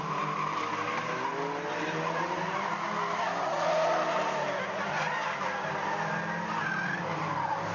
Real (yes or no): yes